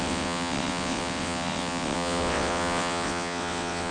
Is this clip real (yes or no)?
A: no